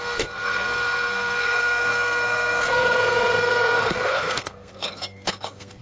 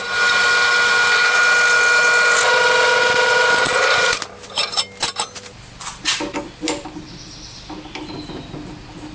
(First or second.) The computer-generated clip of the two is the first